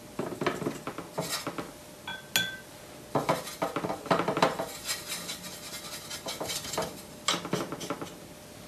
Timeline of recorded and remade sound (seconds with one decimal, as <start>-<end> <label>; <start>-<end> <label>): 0.0-8.7 recorded